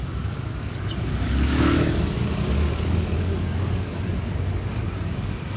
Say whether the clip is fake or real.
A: fake